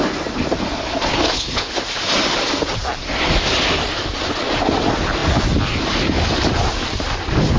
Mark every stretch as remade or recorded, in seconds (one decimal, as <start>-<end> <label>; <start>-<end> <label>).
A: 0.0-1.1 recorded; 1.1-1.7 remade; 1.7-7.6 recorded